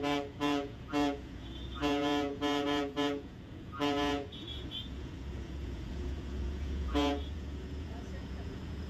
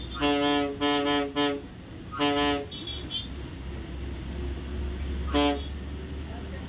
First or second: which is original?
second